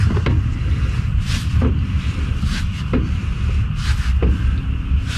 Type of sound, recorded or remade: recorded